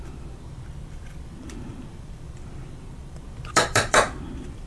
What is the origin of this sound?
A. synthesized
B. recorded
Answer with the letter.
A